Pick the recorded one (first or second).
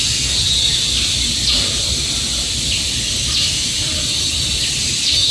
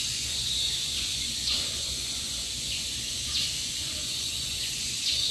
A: first